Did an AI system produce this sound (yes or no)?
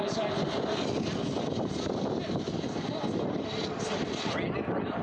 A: no